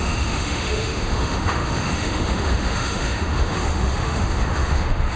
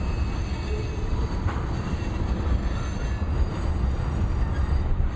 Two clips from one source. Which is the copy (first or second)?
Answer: first